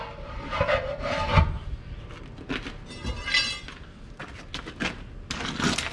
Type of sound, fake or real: real